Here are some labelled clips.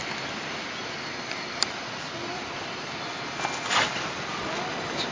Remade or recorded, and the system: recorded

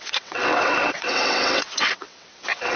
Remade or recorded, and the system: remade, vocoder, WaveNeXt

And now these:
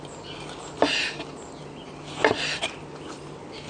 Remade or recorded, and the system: recorded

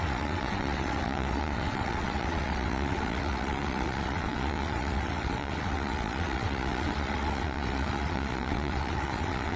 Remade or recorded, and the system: remade, vocoder, WaveNeXt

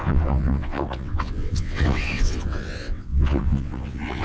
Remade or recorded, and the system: remade, vocoder, WaveNeXt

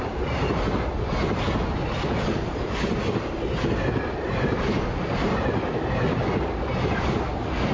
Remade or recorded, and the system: recorded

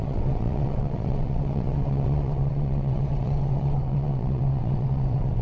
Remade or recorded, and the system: remade, vocoder, WaveNeXt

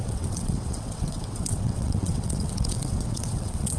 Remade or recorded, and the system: remade, vocoder, WaveNeXt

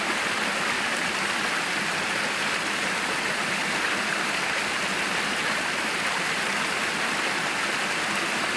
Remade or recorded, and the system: recorded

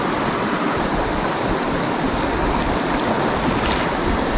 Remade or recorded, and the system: recorded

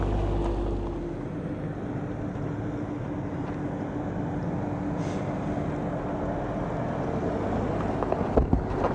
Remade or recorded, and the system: recorded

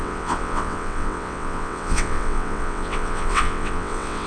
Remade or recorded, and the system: remade, vocoder, WaveNeXt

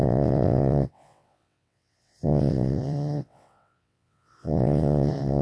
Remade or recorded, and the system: remade, vocoder, WaveNeXt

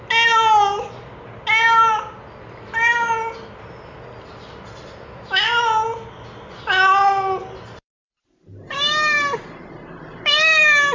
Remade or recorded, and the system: recorded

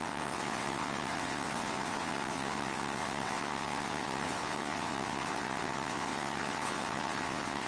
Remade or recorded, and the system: remade, vocoder, WaveNeXt